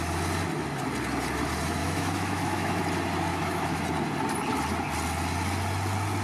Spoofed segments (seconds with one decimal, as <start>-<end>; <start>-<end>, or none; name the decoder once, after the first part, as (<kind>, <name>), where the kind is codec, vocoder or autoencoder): 1.8-2.8 (autoencoder, DAC-VAE); 3.3-3.8